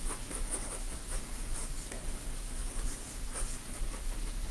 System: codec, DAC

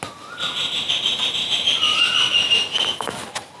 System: none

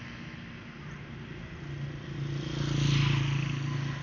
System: none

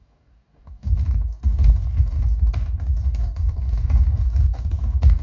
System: codec, DAC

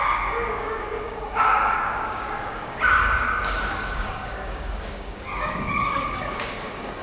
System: codec, DAC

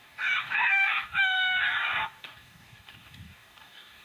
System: codec, DAC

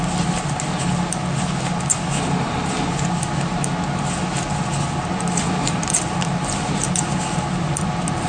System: none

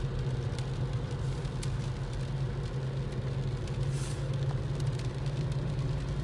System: none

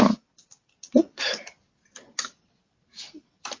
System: none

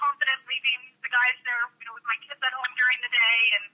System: none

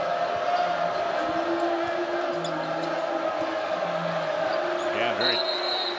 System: none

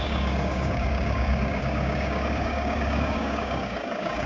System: codec, DAC